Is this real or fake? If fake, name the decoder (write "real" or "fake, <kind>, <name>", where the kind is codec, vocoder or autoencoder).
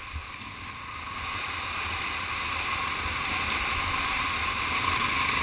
real